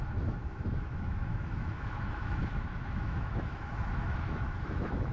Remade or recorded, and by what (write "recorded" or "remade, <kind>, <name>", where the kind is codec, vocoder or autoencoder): remade, autoencoder, DAC-VAE